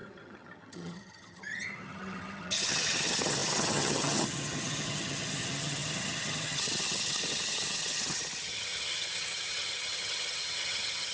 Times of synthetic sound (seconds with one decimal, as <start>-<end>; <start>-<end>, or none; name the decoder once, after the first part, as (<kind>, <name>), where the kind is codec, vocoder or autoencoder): 0.0-11.1 (vocoder, HiFi-GAN)